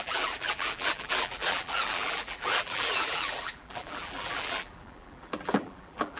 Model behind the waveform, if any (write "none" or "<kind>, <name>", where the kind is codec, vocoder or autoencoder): vocoder, BigVGAN v2